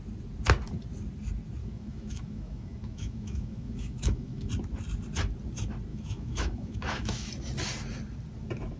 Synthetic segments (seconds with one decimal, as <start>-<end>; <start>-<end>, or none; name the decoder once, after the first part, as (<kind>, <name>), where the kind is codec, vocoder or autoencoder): 1.6-4.5 (autoencoder, DAC-VAE); 5.9-7.3